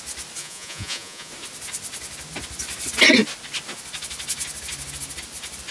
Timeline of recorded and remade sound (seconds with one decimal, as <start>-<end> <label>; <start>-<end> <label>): 0.0-0.4 recorded; 0.4-1.3 remade; 1.3-5.7 recorded